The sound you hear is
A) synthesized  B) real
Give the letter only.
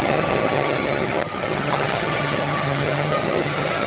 A